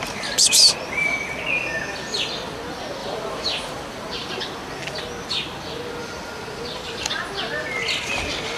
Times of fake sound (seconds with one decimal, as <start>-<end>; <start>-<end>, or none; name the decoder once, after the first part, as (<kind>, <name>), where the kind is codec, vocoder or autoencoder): 3.0-5.0 (vocoder, BigVGAN v2); 6.0-6.9